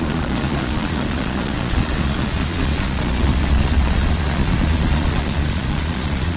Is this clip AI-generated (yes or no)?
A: yes